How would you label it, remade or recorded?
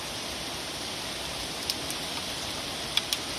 recorded